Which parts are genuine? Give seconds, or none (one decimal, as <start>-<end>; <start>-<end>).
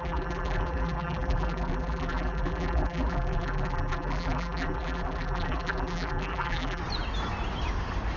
6.8-8.2